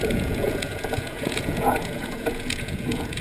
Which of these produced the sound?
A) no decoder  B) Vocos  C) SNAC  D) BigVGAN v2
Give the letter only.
B